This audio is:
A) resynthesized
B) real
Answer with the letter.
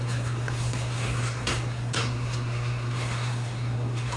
A